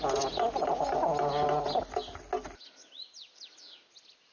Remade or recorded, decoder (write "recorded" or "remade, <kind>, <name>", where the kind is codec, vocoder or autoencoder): recorded